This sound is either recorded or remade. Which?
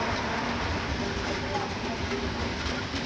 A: recorded